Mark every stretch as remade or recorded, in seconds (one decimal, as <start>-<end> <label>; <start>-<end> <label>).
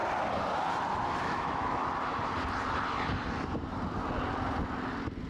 0.0-1.2 recorded; 1.2-1.8 remade; 1.8-5.3 recorded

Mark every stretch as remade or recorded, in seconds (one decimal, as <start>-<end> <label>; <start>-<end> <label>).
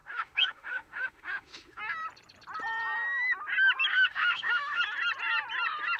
0.0-1.8 remade; 1.8-3.9 recorded; 3.9-4.8 remade; 4.8-6.0 recorded